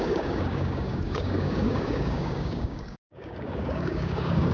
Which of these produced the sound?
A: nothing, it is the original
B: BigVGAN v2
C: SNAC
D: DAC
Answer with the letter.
D